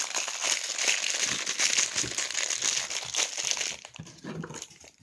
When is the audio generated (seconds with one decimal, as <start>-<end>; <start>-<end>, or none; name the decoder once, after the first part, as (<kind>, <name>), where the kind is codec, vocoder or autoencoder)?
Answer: none